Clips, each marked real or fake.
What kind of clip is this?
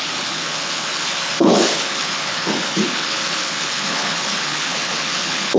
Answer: fake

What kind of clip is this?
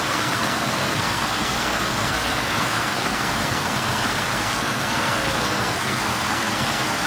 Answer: fake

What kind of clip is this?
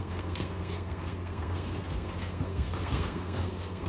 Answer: fake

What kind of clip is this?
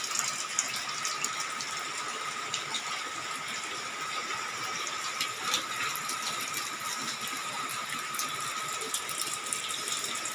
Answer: real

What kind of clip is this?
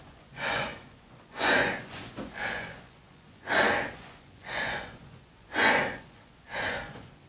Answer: fake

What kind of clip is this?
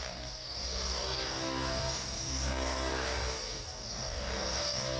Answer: fake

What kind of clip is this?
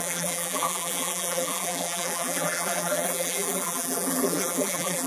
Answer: fake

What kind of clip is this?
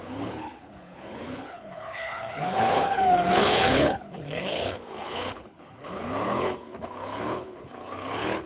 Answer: fake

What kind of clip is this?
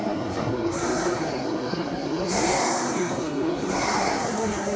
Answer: fake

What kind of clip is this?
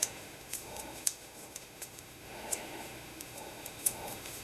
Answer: fake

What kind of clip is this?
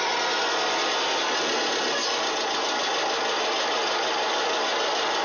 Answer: real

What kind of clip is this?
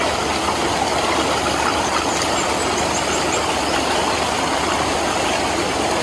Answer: real